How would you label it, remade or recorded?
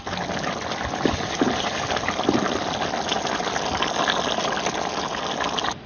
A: recorded